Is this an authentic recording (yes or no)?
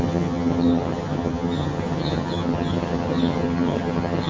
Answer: no